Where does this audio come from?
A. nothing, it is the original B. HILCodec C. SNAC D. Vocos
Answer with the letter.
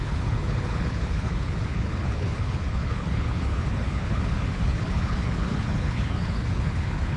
B